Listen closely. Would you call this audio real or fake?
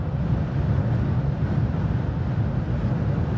real